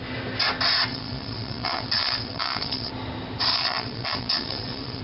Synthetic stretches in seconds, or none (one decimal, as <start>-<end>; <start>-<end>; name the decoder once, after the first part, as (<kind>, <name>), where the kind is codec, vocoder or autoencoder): 0.9-2.9 (vocoder, WaveNeXt); 3.5-5.0